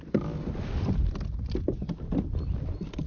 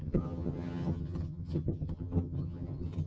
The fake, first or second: second